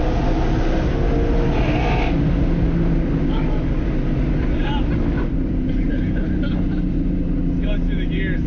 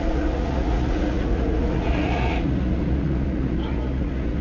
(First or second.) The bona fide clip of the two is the first